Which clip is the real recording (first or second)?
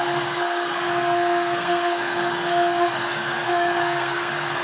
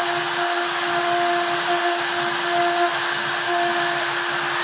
second